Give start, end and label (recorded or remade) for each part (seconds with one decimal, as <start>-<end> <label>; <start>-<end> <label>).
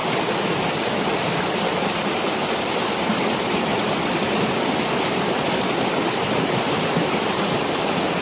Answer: 0.0-3.7 recorded; 3.7-5.6 remade; 5.6-8.2 recorded